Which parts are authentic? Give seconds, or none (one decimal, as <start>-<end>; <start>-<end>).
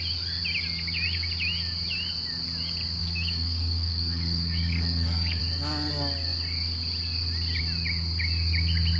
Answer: 0.0-3.0; 5.4-9.0